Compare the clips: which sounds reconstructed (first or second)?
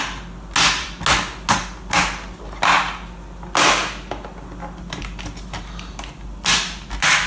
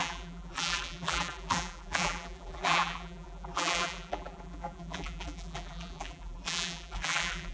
second